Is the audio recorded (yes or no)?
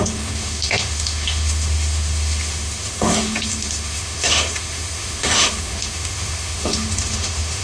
no